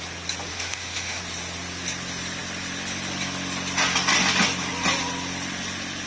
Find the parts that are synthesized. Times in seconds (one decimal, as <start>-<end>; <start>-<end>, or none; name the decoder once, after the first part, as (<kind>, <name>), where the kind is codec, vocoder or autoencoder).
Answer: 0.5-1.2 (autoencoder, DAC-VAE)